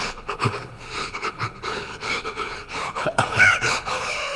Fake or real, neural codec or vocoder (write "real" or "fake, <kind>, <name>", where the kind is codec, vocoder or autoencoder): fake, codec, HILCodec